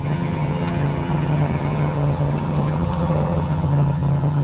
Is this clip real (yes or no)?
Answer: no